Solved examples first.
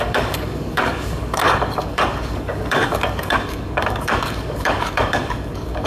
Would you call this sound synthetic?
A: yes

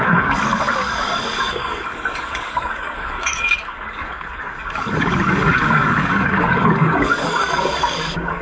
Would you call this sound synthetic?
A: yes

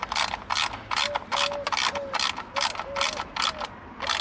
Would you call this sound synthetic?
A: no